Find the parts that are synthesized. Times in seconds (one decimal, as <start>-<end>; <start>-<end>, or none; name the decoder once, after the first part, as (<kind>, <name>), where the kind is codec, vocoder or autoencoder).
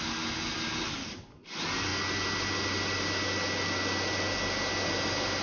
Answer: none